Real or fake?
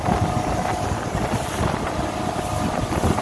real